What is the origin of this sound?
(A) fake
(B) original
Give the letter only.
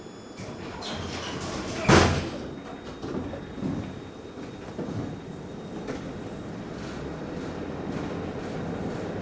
B